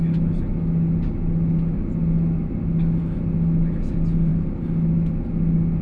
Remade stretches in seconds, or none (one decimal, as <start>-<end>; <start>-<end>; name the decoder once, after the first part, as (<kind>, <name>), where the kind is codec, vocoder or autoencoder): none